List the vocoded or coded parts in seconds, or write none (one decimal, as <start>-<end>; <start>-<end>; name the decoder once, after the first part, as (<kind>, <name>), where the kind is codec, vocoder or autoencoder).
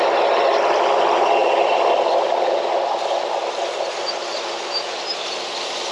none